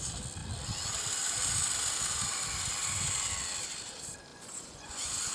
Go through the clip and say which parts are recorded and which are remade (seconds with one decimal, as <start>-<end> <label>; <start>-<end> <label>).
0.0-4.3 recorded; 4.3-5.3 remade